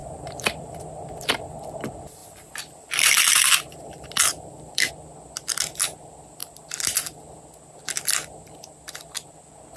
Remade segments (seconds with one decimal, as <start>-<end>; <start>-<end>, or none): 0.0-0.8; 2.2-4.9; 6.4-7.2

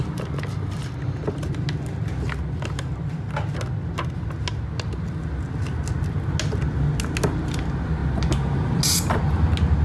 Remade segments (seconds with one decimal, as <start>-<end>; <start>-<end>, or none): none

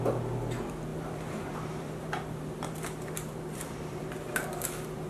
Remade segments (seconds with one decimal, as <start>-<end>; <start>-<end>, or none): 0.9-4.0

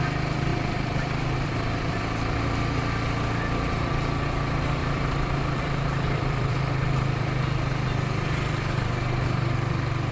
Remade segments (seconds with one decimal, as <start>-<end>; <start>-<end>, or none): 0.5-2.0; 4.8-7.7